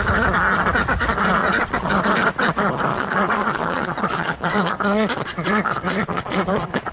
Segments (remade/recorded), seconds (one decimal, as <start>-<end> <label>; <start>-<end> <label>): 0.0-1.4 recorded; 1.4-1.9 remade; 1.9-2.9 recorded; 2.9-6.9 remade